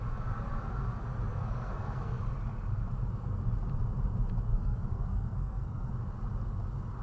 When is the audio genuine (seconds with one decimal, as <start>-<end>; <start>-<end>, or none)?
0.0-1.3; 2.2-4.5; 5.9-7.0